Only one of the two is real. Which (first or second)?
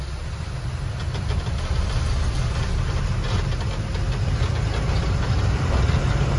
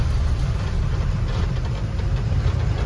first